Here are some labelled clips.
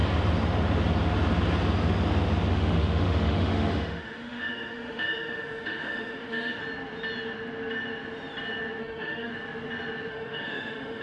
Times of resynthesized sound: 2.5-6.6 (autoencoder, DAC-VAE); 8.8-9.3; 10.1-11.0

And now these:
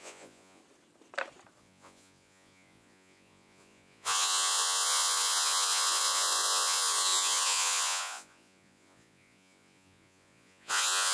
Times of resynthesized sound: 0.0-0.6 (vocoder, Vocos); 1.6-11.1